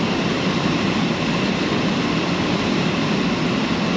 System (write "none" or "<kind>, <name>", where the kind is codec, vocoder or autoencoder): none